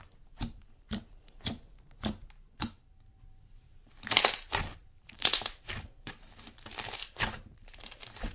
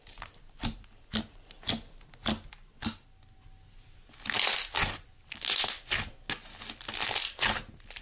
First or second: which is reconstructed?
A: first